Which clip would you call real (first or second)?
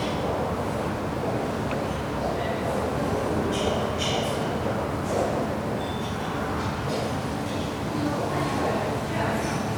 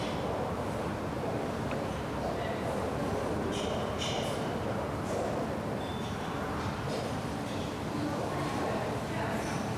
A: first